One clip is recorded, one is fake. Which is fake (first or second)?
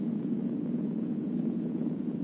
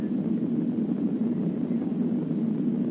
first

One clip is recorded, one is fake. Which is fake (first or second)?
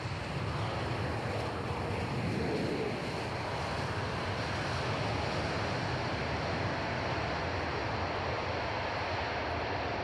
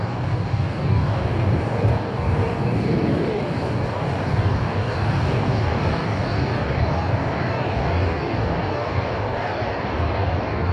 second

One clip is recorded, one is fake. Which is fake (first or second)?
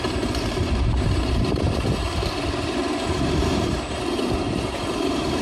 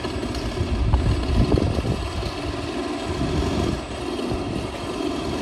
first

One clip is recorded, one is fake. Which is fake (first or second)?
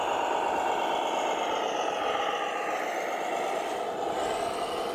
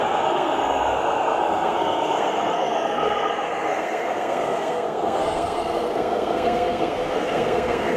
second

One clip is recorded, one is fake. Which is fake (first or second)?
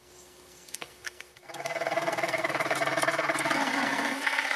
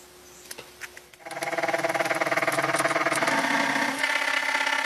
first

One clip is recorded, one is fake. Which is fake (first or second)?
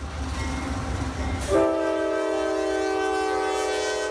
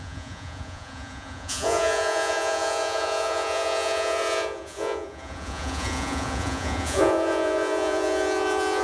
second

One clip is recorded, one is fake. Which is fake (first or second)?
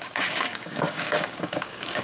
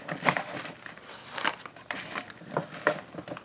first